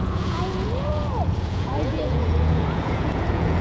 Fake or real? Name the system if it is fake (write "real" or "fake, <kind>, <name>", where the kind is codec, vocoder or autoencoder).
fake, vocoder, Vocos